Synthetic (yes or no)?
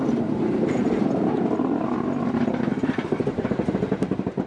yes